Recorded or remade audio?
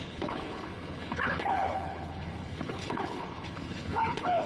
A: remade